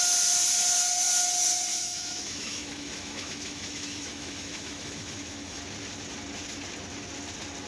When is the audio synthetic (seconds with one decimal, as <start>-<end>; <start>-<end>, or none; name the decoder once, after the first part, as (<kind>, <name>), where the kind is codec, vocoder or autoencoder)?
1.7-5.6 (autoencoder, DAC-VAE)